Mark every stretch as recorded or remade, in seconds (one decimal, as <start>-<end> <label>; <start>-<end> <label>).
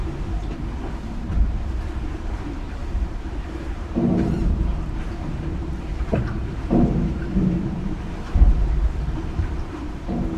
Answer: 0.0-10.4 remade